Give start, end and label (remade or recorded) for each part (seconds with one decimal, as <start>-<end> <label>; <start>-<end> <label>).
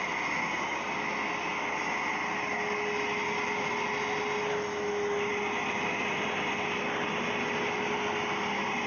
0.0-8.9 recorded